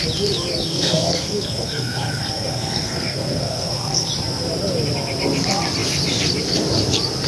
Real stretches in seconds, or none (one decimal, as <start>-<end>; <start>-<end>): 0.0-0.6; 4.1-7.3